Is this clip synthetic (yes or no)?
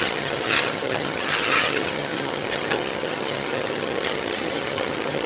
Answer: yes